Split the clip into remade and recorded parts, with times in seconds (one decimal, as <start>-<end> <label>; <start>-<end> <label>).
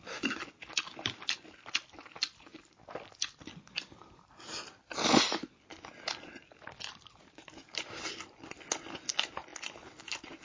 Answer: 0.0-10.4 recorded